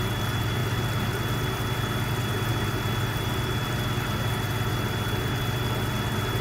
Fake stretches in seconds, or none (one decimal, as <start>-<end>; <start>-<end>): none

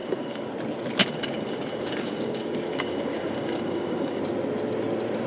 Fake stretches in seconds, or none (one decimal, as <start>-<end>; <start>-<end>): 0.0-0.5; 1.0-4.2

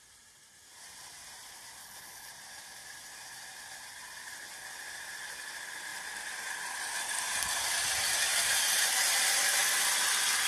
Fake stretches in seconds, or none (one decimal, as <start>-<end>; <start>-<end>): 1.8-2.3

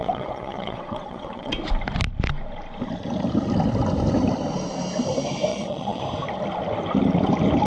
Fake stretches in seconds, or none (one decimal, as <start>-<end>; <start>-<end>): 0.0-1.5; 5.5-6.0

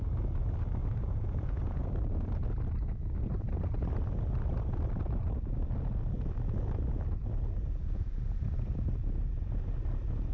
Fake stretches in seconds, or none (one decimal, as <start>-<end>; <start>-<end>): 0.8-1.8; 7.8-8.3

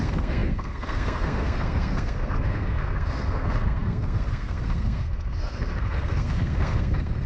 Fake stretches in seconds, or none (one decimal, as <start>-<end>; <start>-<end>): 0.0-7.3

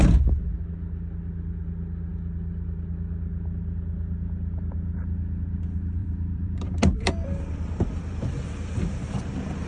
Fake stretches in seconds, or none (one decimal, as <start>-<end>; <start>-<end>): 6.0-7.4